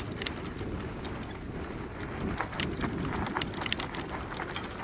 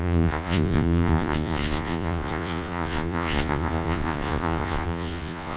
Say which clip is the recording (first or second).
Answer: first